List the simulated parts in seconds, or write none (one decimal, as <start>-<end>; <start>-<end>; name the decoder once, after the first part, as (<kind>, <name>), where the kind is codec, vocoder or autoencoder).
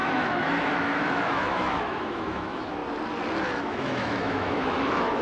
0.0-2.8 (autoencoder, DAC-VAE); 3.6-5.2